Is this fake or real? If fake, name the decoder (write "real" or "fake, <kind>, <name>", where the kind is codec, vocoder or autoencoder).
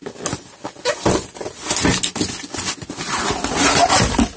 real